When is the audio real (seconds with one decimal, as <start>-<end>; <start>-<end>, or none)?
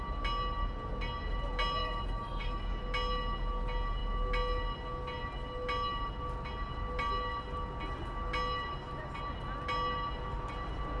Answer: 0.0-1.8; 2.6-11.0